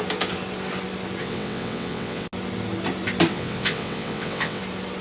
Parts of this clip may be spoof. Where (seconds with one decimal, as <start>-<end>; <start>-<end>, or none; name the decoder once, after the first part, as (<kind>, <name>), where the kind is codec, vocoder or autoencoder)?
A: 1.2-2.3 (vocoder, WaveNeXt); 3.3-4.6